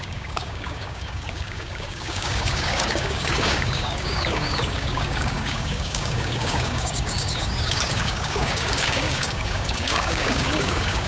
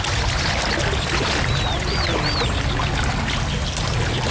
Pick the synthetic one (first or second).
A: first